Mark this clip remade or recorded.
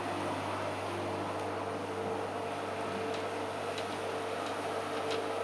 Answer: recorded